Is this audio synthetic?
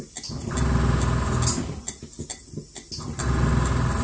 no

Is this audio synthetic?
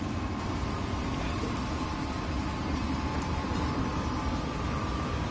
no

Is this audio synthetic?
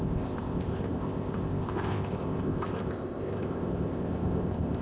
yes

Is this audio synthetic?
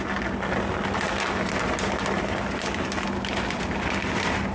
no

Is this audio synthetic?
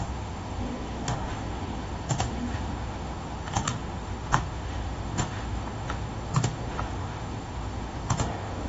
yes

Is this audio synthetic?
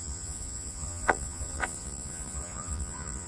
yes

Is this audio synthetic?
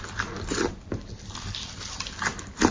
no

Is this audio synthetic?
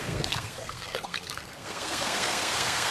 yes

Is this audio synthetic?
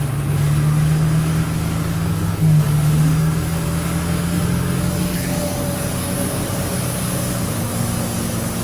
yes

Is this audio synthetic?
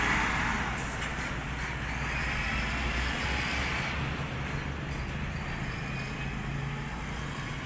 no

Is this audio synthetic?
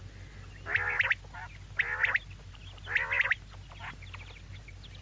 no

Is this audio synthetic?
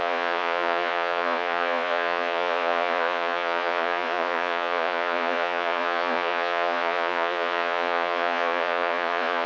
yes